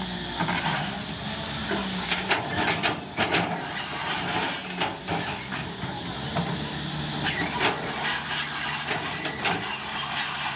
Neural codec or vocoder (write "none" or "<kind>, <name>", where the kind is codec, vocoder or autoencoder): none